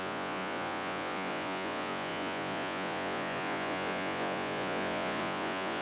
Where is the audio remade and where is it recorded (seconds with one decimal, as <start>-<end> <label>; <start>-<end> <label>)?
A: 0.0-5.8 remade